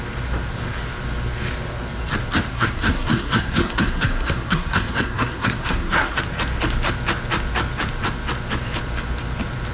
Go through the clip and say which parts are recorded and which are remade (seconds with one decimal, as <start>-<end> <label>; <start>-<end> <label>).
0.0-2.5 recorded; 2.5-6.2 remade; 6.2-9.7 recorded